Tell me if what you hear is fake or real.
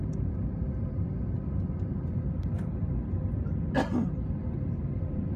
real